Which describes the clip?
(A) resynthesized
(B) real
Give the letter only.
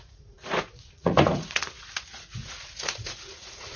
A